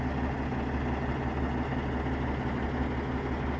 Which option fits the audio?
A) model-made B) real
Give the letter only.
B